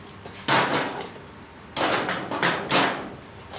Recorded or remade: recorded